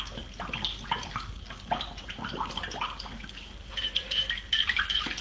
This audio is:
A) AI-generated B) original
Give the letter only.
B